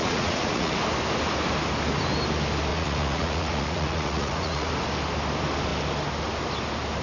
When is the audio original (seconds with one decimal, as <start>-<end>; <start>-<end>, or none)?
0.7-2.7; 4.7-7.0

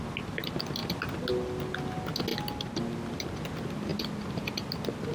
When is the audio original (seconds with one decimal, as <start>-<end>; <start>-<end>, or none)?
0.0-5.1

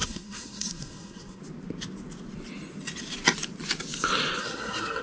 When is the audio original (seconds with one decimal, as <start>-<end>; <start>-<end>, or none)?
1.4-4.4